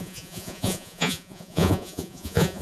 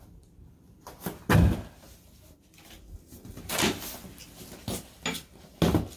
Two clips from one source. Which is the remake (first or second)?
first